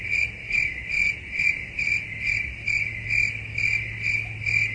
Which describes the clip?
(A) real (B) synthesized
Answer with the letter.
A